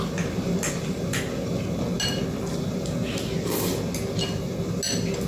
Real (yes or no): yes